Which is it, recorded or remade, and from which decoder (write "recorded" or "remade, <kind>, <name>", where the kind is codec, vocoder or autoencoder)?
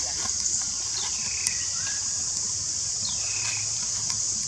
recorded